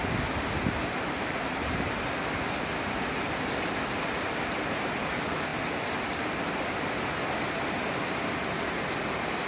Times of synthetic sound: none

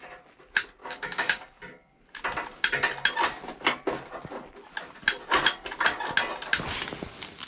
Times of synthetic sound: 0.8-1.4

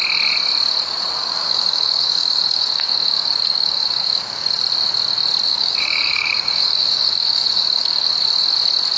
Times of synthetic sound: 1.2-4.7; 5.5-8.1

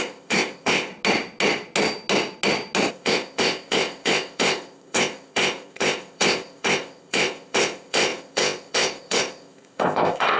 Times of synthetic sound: 0.0-0.9; 2.9-10.4